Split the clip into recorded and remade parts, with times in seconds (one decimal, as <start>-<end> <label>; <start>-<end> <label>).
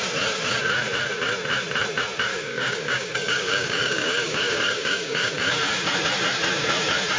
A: 0.0-2.3 recorded; 2.3-5.3 remade; 5.3-7.2 recorded